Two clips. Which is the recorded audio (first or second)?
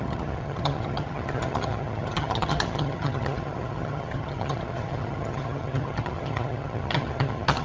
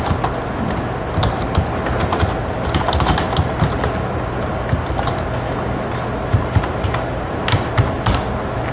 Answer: second